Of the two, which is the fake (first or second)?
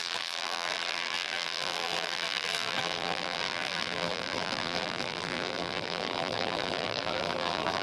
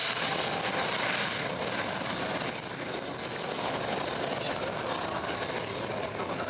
first